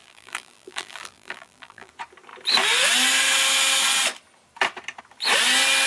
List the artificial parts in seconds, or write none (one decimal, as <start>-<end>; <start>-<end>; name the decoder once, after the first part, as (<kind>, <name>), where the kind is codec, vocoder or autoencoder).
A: 0.0-1.9 (vocoder, BigVGAN v2)